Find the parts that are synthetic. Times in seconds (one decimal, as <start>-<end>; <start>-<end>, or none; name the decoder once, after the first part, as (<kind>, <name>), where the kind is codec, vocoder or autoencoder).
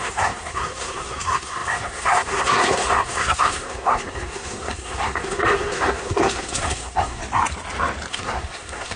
0.0-7.2 (codec, SNAC); 8.1-9.0